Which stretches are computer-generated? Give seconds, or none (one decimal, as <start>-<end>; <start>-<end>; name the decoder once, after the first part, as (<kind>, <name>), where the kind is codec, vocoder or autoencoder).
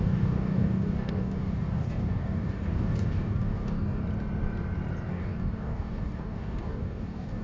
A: 0.0-4.0 (codec, DAC); 5.1-7.4